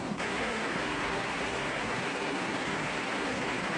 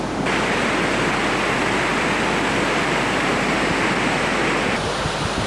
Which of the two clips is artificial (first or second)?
first